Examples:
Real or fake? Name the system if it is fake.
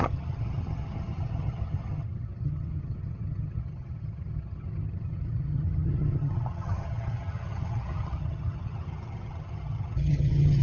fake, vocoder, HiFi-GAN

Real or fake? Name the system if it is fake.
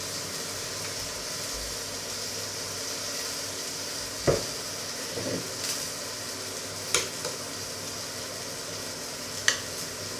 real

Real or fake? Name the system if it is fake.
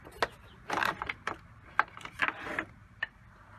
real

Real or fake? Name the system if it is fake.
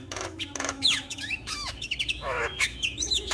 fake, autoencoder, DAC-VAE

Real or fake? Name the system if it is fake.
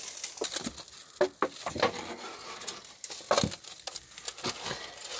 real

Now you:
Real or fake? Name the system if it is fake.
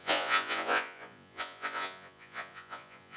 fake, vocoder, Vocos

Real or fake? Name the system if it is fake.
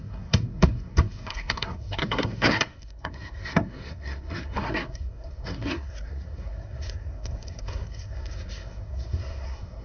fake, codec, SNAC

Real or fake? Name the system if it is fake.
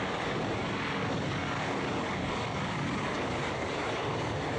fake, codec, DAC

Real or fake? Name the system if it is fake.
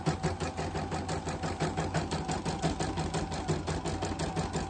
real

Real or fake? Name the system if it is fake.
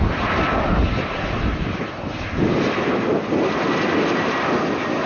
real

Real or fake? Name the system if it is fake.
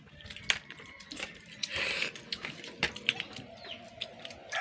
fake, vocoder, BigVGAN v2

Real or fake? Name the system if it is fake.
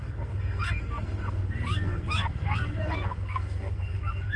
fake, codec, SNAC